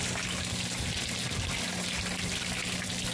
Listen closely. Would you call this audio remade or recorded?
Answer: recorded